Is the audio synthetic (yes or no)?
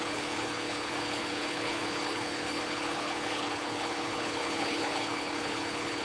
yes